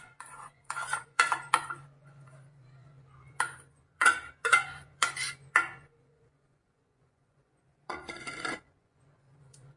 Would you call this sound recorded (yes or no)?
no